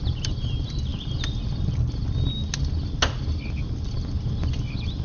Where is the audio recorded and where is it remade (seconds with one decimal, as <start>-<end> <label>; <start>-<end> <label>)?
0.0-5.0 recorded